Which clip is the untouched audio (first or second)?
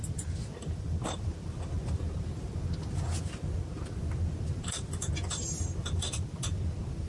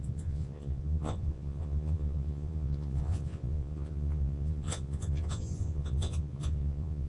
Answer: first